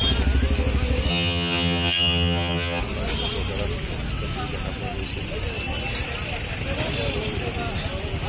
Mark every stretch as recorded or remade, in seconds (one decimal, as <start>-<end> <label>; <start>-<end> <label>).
0.0-1.1 recorded; 1.1-2.8 remade; 2.8-8.3 recorded